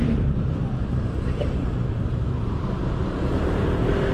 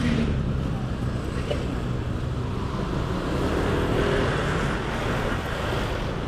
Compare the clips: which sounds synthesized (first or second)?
first